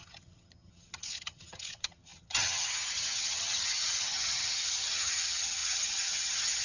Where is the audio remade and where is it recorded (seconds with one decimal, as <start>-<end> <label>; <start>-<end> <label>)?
0.0-6.6 remade

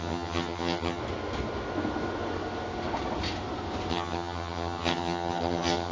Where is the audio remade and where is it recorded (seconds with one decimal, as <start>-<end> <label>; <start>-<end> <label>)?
0.0-1.0 remade; 1.0-3.9 recorded; 3.9-5.9 remade

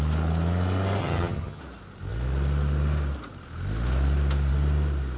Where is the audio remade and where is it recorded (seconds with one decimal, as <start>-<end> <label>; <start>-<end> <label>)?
0.0-1.0 recorded; 1.0-1.6 remade; 1.6-5.2 recorded